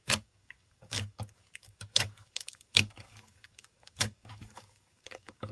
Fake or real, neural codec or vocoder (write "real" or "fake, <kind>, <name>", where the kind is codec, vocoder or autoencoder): fake, codec, DAC